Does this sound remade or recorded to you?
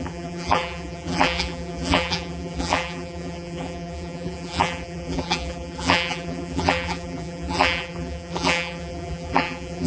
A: remade